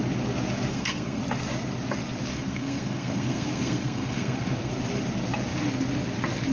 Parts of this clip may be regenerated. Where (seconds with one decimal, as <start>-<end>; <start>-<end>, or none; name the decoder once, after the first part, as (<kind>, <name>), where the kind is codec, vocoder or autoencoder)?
0.7-1.2 (codec, SNAC); 2.3-4.7